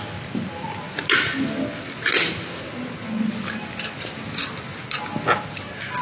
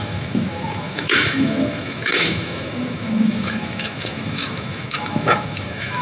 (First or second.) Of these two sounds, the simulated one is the second